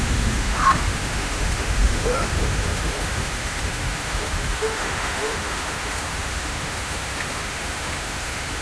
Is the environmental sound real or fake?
fake